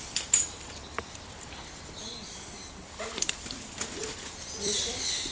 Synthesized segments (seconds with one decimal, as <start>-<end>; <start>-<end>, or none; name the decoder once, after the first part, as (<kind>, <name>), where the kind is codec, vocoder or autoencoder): 0.0-5.3 (vocoder, BigVGAN v2)

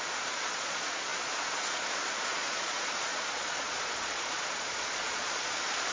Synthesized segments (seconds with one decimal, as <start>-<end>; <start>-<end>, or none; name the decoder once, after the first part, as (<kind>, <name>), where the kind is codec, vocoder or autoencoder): 0.0-5.9 (vocoder, Vocos)

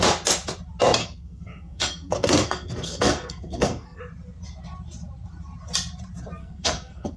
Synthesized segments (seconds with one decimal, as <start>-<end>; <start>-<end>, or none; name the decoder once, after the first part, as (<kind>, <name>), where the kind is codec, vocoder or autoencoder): 1.0-4.0 (codec, SNAC); 6.4-7.2

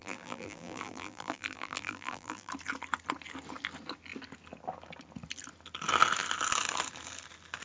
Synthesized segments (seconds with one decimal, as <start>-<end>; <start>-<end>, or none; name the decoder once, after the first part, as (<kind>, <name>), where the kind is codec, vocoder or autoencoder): 0.0-2.5 (vocoder, BigVGAN v2)

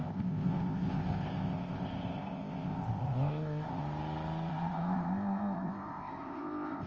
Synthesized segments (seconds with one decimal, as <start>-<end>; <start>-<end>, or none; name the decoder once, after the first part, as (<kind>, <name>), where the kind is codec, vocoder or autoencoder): 0.0-3.8 (codec, ZipCodec); 4.5-6.9

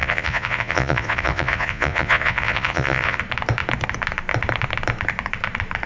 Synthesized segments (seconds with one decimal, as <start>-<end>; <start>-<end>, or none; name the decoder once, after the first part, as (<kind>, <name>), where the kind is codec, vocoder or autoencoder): 0.0-3.2 (vocoder, Vocos)